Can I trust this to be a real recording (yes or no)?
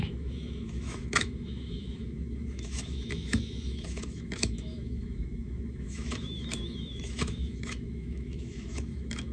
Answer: no